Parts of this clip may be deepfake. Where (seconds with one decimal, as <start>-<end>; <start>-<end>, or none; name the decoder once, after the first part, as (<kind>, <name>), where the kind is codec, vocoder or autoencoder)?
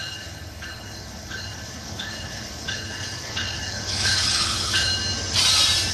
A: 0.0-4.9 (codec, HILCodec)